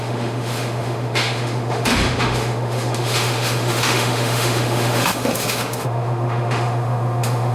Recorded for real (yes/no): no